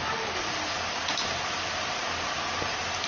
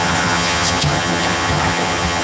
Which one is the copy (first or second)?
second